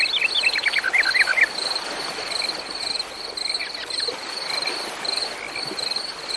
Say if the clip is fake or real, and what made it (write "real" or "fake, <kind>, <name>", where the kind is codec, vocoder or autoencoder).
real